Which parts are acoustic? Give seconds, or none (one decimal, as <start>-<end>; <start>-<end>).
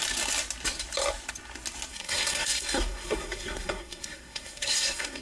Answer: 0.0-1.9